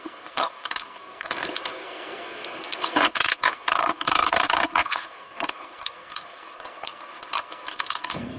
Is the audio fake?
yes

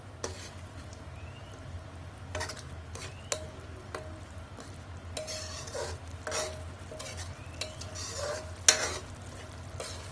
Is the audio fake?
no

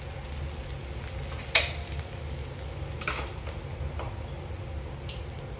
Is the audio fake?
no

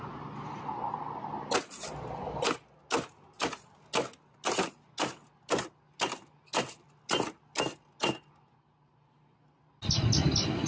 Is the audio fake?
no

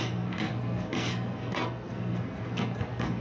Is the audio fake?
yes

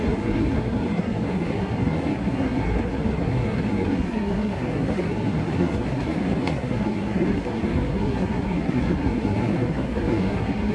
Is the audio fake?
yes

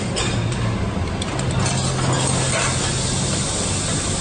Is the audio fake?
no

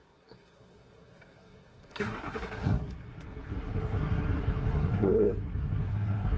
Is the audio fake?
yes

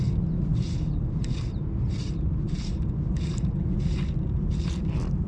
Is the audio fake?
no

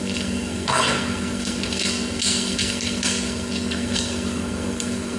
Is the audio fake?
yes